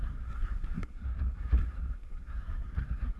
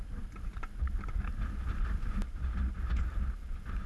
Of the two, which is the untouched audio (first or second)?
second